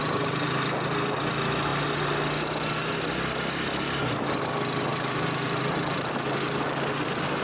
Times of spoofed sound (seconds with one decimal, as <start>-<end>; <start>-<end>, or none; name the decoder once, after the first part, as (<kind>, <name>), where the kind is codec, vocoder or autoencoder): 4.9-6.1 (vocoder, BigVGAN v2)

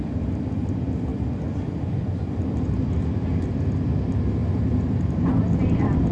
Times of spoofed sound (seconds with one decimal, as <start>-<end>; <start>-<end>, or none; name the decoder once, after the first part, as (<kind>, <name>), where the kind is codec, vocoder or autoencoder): 1.1-3.6 (vocoder, BigVGAN v2); 4.4-6.1

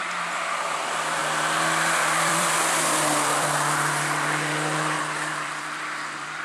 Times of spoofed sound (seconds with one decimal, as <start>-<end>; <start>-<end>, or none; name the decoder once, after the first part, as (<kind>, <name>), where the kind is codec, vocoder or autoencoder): 0.0-6.4 (vocoder, BigVGAN v2)

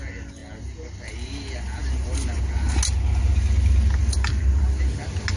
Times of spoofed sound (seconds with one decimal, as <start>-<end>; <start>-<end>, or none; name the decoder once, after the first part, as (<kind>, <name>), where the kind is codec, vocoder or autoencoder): 1.8-2.4 (vocoder, BigVGAN v2); 4.0-4.6

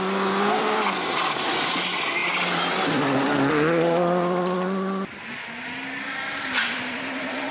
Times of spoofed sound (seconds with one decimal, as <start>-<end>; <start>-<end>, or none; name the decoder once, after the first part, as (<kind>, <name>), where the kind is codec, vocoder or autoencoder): none

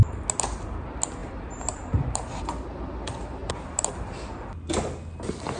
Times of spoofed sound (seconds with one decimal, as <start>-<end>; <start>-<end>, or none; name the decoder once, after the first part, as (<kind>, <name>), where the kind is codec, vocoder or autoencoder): 1.2-2.8 (vocoder, BigVGAN v2); 3.4-4.5